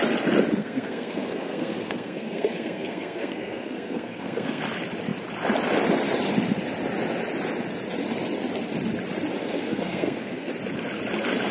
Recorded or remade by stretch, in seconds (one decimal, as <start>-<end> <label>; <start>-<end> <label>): 0.0-0.6 recorded; 0.6-4.6 remade; 4.6-9.4 recorded; 9.4-10.5 remade; 10.5-11.5 recorded